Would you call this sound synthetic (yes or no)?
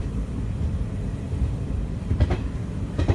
yes